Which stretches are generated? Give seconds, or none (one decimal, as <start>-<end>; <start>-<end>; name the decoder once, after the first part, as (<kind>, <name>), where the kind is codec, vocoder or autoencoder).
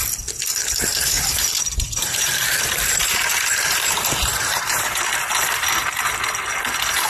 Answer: 0.9-5.0 (vocoder, BigVGAN v2)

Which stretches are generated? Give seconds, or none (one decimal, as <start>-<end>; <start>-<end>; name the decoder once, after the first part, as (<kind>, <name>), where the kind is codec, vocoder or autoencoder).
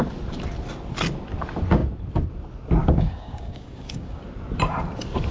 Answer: 2.8-4.2 (codec, DAC)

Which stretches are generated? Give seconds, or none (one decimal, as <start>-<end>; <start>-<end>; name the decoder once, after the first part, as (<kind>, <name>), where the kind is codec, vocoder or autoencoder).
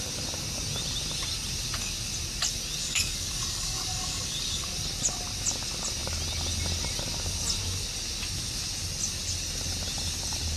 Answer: 2.8-4.6 (codec, DAC)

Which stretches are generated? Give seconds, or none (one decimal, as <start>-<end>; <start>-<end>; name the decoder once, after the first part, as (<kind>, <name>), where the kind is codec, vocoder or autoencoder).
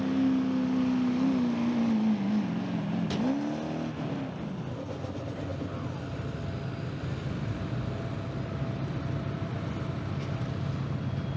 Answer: none